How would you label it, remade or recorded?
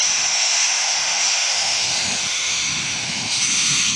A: remade